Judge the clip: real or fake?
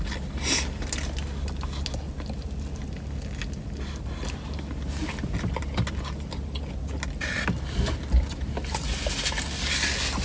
real